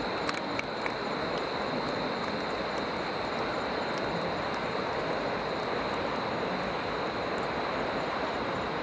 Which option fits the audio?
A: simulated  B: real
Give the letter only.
B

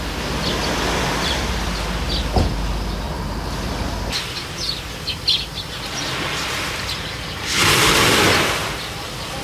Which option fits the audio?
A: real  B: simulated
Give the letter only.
A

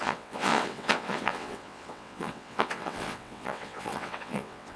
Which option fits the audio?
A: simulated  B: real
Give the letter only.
A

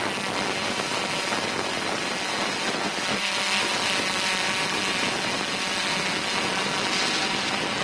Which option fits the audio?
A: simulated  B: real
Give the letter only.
B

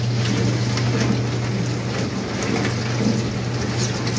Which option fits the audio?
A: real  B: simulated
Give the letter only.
A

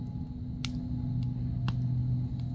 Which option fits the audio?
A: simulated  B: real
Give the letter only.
B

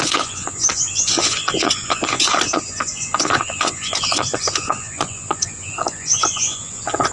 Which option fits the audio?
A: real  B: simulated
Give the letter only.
B